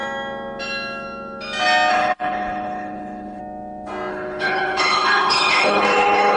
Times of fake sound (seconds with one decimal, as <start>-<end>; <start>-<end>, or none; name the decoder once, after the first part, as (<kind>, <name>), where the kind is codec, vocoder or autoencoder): 1.9-3.4 (codec, HILCodec); 4.1-6.4